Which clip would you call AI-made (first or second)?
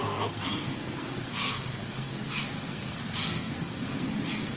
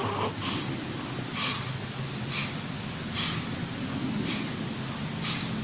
first